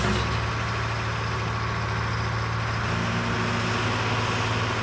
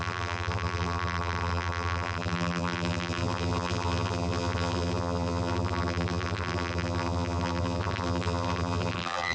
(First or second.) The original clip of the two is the first